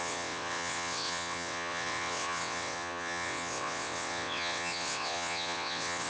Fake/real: fake